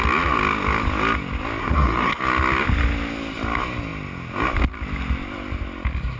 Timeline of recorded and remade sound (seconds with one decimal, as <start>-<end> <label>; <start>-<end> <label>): 0.0-1.6 recorded; 1.6-2.2 remade; 2.2-6.2 recorded